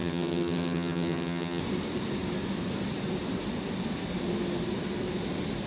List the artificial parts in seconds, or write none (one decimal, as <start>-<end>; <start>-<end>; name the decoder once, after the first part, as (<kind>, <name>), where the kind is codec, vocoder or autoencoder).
0.0-1.6 (vocoder, HiFi-GAN)